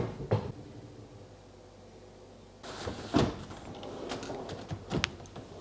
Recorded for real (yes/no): yes